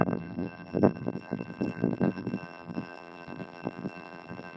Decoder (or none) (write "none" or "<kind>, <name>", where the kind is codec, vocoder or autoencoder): vocoder, BigVGAN v2